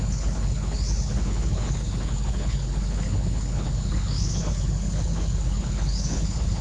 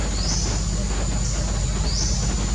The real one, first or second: second